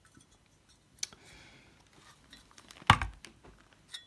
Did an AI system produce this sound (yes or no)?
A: no